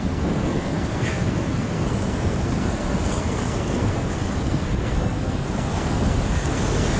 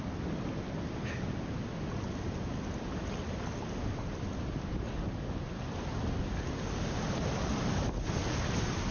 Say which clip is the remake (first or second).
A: first